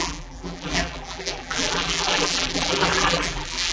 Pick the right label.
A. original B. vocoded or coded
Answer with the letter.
B